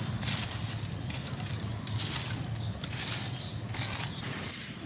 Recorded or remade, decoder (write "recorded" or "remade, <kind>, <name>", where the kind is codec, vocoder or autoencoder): remade, vocoder, BigVGAN v2